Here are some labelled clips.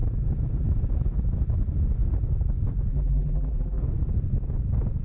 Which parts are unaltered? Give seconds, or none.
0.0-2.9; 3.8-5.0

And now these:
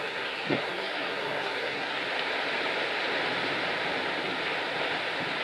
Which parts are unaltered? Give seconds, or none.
2.0-5.4